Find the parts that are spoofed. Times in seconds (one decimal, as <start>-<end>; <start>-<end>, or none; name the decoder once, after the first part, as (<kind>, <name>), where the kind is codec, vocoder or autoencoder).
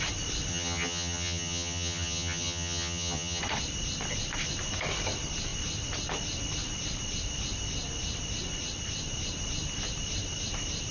0.5-3.4 (vocoder, HiFi-GAN)